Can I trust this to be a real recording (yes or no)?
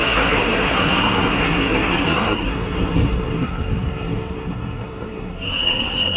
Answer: no